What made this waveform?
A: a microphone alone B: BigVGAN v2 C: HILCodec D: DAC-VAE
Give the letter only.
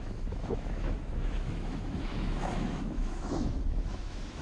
D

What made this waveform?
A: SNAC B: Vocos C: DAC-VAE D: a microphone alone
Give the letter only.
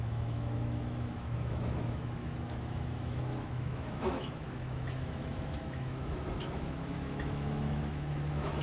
C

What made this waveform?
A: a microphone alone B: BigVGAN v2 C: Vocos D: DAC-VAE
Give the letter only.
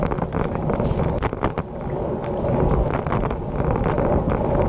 A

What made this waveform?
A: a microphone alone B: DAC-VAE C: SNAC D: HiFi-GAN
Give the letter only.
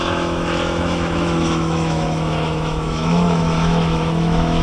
B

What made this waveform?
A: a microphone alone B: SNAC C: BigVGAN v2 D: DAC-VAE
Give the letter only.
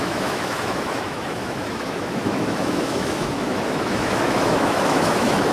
D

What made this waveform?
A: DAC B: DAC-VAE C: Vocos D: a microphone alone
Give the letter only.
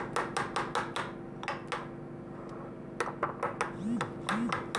D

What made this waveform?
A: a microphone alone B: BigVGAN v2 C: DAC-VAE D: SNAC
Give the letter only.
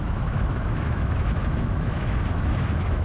C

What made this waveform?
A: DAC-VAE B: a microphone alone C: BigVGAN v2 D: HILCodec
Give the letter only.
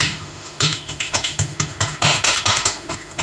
A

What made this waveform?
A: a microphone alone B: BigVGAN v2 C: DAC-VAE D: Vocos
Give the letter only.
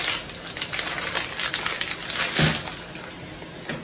A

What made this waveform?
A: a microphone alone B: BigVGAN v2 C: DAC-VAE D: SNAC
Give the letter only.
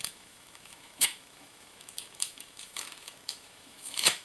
C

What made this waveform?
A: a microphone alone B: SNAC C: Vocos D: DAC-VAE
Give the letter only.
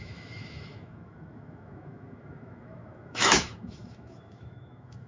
D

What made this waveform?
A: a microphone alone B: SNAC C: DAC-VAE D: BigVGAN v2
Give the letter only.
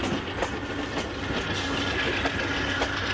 A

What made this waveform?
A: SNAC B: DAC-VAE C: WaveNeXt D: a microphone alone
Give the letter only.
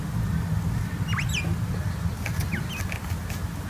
D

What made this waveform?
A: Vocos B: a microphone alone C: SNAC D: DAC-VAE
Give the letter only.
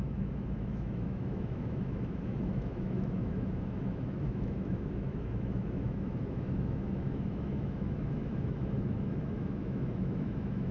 D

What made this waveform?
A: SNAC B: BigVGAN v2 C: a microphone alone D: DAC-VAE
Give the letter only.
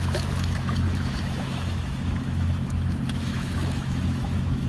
D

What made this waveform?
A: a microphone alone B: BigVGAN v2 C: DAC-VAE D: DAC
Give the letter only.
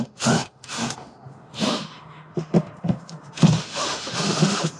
C